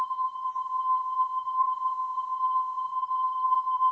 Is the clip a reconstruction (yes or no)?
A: yes